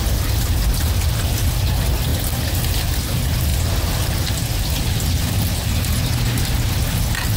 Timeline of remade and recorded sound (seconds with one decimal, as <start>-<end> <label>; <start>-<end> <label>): 0.0-7.4 recorded